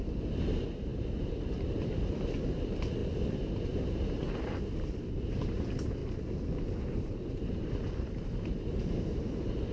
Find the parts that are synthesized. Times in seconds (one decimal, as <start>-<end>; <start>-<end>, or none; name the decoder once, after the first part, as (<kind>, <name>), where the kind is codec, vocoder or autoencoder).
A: 0.0-6.0 (vocoder, BigVGAN v2); 6.9-9.7